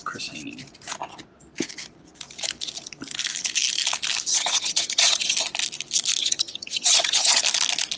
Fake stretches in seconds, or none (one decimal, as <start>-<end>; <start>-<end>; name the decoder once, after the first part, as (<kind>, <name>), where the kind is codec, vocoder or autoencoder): 4.3-5.3 (vocoder, HiFi-GAN); 6.2-7.4